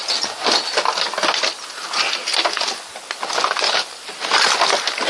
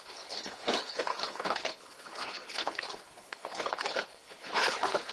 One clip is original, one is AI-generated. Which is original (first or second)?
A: first